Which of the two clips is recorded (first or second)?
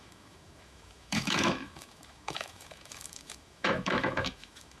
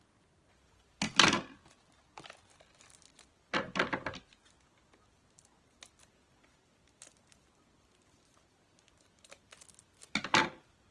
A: second